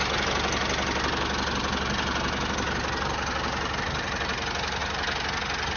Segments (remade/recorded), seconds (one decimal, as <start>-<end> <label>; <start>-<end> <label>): 0.0-5.8 recorded